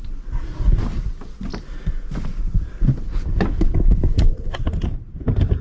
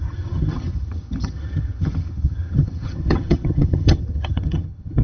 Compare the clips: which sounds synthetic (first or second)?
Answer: second